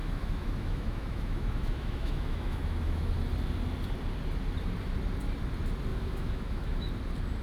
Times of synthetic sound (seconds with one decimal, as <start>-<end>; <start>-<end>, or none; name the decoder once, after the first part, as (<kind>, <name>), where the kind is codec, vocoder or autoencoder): 0.0-3.1 (autoencoder, DAC-VAE); 5.9-6.9